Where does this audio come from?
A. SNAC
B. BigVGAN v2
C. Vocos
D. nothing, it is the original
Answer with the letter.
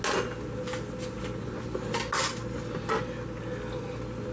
D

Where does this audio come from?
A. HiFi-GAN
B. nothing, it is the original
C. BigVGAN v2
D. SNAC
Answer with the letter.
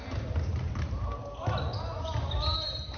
B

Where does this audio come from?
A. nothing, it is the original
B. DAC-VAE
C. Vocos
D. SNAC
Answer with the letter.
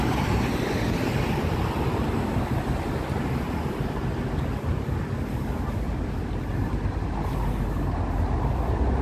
A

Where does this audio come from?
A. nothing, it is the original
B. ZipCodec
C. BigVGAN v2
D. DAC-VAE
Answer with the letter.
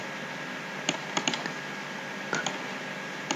A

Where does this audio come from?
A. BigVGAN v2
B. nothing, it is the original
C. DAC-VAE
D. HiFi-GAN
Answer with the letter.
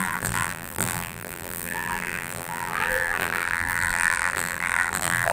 A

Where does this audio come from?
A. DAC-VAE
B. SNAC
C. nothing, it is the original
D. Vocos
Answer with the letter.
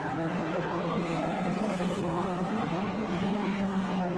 B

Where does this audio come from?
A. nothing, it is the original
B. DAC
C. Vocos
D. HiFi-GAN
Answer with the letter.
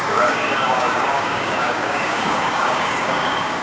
B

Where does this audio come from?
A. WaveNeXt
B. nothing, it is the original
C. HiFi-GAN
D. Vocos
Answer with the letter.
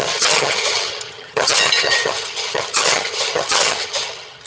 C